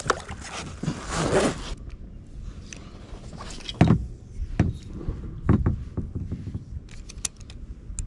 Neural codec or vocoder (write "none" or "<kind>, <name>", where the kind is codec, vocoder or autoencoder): none